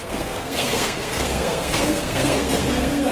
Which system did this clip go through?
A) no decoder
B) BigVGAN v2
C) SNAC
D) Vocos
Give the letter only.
C